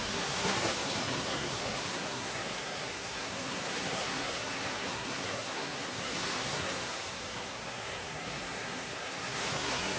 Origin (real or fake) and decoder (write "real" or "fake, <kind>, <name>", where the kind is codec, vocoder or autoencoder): fake, codec, SNAC